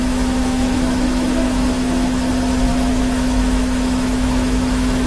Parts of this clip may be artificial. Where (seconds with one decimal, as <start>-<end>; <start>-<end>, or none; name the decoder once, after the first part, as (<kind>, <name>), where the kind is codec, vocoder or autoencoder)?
0.0-2.3 (autoencoder, DAC-VAE); 2.7-5.1